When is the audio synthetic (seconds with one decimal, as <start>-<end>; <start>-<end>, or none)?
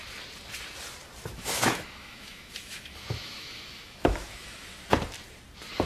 1.3-4.8